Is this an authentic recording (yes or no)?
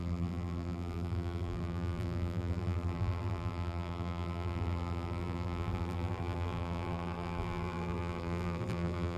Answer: no